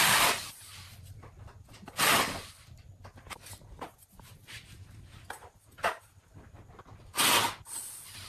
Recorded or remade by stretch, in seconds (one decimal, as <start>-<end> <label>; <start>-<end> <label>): 0.0-3.1 recorded; 3.1-6.6 remade; 6.6-8.3 recorded